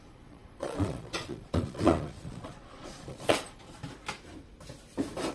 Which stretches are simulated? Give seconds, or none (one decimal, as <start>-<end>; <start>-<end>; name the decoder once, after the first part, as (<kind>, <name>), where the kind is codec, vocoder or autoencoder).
0.0-3.8 (vocoder, Vocos)